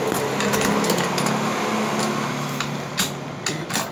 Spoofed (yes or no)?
no